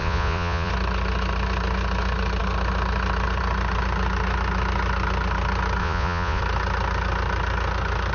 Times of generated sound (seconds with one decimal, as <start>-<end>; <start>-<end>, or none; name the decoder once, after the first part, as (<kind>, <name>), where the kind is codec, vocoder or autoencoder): 0.0-0.7 (vocoder, Vocos); 5.8-6.4